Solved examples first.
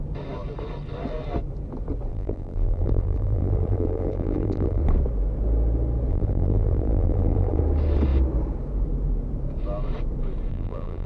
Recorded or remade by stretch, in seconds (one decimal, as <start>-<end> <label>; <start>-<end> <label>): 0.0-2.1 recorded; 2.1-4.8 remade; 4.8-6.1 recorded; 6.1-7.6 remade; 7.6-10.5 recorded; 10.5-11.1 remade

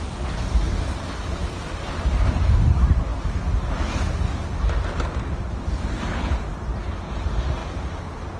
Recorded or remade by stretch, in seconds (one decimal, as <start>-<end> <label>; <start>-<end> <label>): 0.0-8.4 recorded

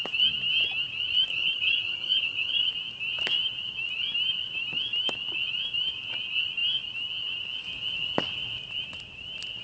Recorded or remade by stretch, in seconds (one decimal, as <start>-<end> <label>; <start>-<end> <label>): 0.0-1.3 recorded; 1.3-2.7 remade; 2.7-9.6 recorded

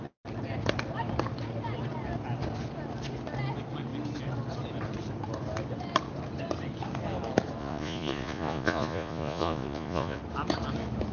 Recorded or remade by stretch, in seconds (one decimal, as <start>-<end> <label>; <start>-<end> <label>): 0.0-7.6 recorded; 7.6-10.2 remade; 10.2-11.1 recorded

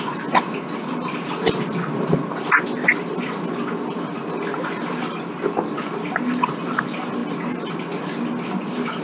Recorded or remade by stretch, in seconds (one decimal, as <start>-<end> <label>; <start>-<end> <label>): 0.0-9.0 recorded

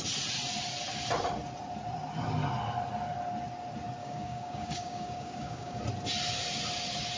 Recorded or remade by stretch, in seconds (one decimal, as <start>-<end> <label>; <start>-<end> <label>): 0.0-4.0 recorded; 4.0-5.8 remade; 5.8-7.2 recorded

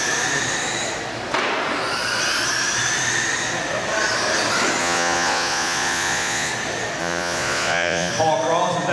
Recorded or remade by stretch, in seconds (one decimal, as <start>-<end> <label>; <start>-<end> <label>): 0.0-4.8 recorded; 4.8-6.5 remade; 6.5-7.0 recorded; 7.0-8.1 remade; 8.1-8.9 recorded

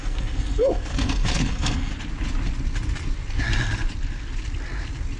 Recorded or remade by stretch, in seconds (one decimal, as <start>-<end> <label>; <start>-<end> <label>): 0.0-1.9 remade; 1.9-5.2 recorded